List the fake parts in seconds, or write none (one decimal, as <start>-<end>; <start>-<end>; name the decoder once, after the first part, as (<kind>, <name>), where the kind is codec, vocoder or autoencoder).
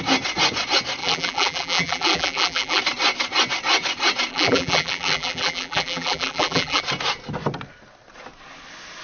1.0-2.8 (vocoder, BigVGAN v2); 4.3-6.8